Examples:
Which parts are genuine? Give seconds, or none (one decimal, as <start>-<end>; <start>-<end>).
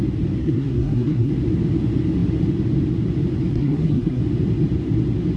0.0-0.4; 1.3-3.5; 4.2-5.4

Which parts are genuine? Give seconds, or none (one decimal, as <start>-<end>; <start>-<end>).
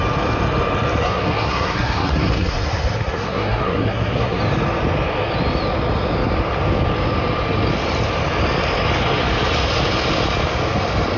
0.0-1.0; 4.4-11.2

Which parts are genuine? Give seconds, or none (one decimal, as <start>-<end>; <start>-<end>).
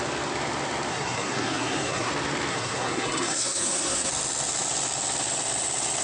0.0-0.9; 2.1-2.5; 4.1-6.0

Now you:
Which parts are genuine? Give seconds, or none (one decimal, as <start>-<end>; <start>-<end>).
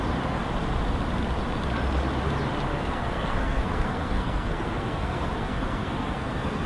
0.0-2.7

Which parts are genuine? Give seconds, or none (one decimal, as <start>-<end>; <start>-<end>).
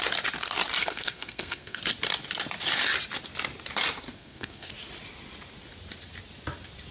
0.0-0.8; 1.8-4.1; 4.7-6.9